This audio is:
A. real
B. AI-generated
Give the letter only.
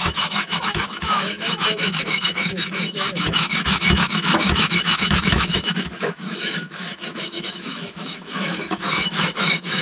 B